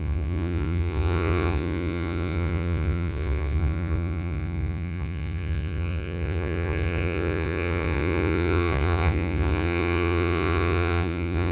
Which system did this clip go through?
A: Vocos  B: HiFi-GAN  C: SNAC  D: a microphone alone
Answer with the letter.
A